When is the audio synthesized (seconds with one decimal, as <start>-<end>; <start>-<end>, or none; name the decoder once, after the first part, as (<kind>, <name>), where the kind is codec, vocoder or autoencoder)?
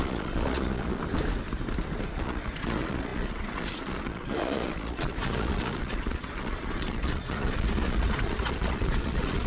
0.0-1.0 (vocoder, Vocos); 2.1-9.5